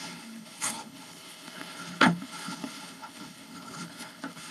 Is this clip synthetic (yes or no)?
yes